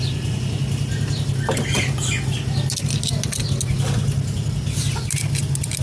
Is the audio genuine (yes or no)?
yes